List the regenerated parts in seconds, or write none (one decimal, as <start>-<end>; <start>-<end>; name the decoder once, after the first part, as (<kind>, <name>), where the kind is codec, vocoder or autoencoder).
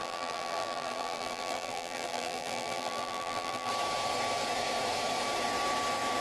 0.0-3.7 (vocoder, BigVGAN v2)